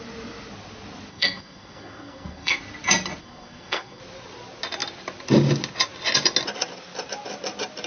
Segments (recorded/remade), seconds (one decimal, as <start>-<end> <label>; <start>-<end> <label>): 0.0-1.1 recorded; 1.1-2.6 remade; 2.6-3.2 recorded; 3.2-4.0 remade; 4.0-7.9 recorded